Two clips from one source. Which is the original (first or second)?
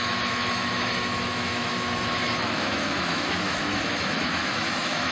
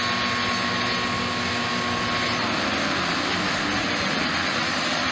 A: second